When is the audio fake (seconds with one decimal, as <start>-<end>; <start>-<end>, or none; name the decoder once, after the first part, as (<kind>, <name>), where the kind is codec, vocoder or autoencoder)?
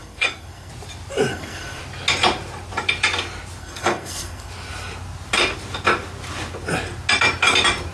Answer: 0.0-0.7 (codec, SNAC); 1.3-1.8; 3.6-4.5